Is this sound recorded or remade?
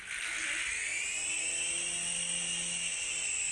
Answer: recorded